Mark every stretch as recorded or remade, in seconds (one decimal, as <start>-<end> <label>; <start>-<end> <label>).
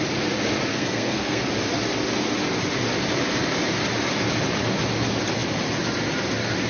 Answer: 0.0-0.7 recorded; 0.7-1.4 remade; 1.4-6.7 recorded